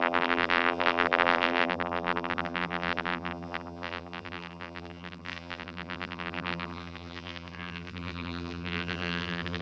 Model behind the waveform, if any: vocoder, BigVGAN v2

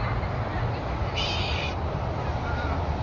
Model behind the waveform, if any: none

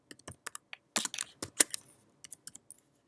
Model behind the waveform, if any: none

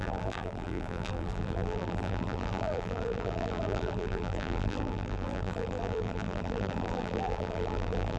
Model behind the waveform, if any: vocoder, BigVGAN v2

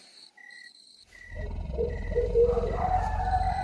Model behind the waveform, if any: vocoder, BigVGAN v2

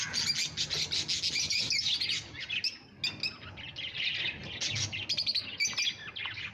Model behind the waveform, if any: none